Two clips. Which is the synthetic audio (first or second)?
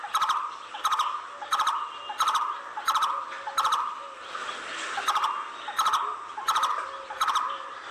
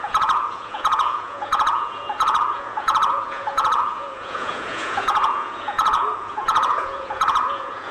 second